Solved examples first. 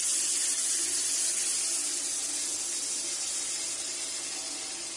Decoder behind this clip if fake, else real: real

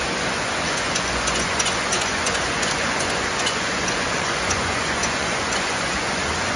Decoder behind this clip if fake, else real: fake, vocoder, Vocos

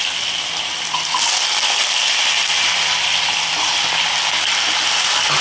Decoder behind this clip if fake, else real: real